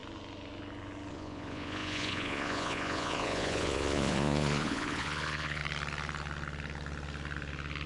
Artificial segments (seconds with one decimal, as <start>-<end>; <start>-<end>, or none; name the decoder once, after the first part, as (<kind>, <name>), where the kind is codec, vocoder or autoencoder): 1.1-5.6 (vocoder, Vocos)